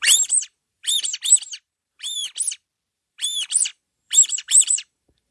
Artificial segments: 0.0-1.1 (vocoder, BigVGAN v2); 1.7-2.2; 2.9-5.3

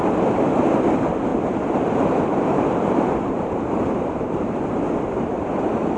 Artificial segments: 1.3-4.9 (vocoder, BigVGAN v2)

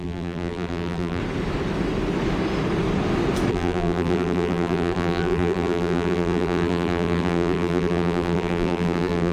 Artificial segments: 0.0-1.2 (vocoder, BigVGAN v2); 3.5-9.3

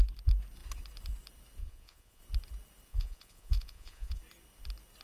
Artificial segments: 1.6-2.2 (vocoder, Vocos); 2.9-4.2

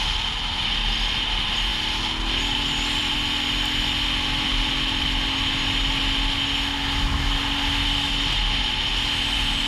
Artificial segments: none

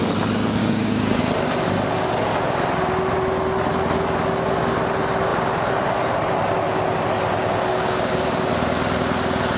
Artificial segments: 0.6-1.2 (codec, DAC); 7.7-8.5

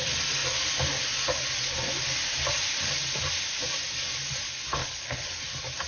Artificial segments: 4.8-5.4 (codec, HILCodec)

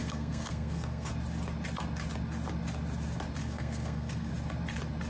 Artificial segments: 0.0-1.1 (codec, SNAC); 3.4-4.3